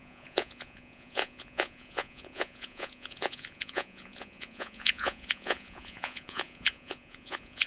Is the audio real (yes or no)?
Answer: no